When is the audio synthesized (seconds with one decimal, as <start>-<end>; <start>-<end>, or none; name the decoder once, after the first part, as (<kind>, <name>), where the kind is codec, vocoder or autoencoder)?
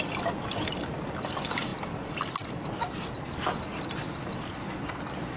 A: none